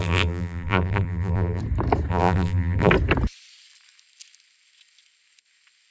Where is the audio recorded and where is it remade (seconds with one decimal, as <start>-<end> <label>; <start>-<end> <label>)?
0.0-1.6 remade; 1.6-2.1 recorded; 2.1-2.9 remade; 2.9-5.9 recorded